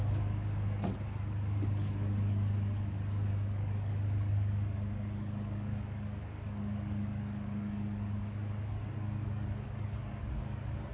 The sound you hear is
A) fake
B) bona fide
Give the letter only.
A